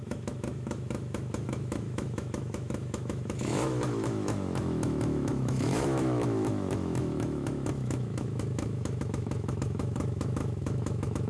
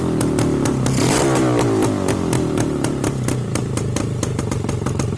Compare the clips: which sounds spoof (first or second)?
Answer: first